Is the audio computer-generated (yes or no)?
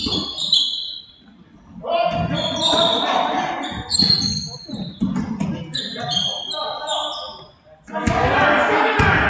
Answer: no